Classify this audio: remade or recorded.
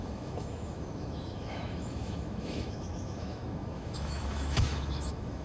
remade